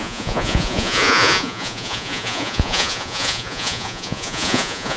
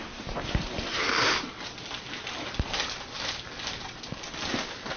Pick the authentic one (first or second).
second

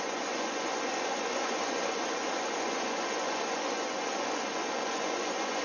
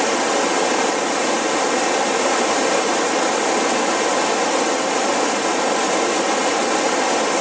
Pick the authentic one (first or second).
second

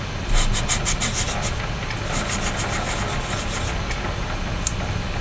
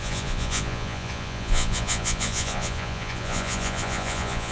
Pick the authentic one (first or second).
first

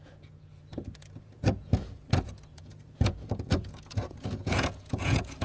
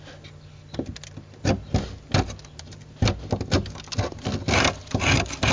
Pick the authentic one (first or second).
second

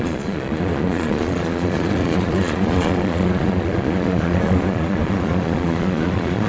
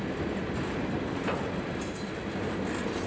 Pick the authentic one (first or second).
second